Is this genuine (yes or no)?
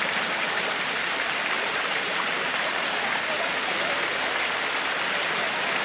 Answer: yes